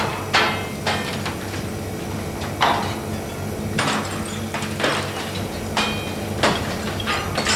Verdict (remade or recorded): recorded